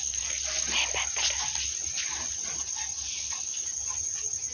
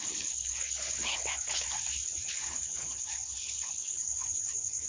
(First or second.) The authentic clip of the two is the first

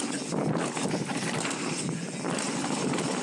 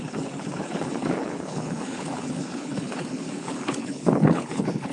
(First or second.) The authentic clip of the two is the first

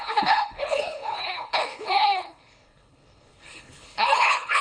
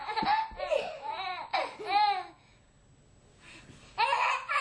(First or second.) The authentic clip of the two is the second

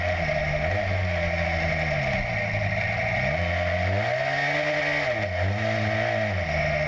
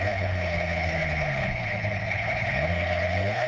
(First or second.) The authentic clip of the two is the first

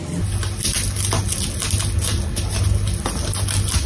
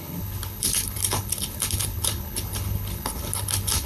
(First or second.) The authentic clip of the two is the first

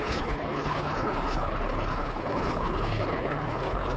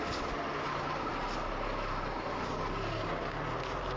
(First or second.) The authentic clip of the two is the second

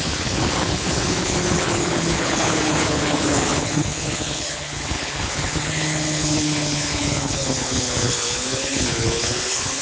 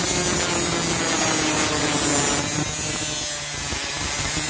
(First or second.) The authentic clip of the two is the second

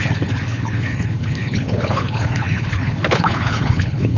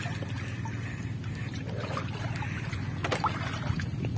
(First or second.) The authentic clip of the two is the second